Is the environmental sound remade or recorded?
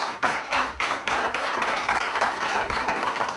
remade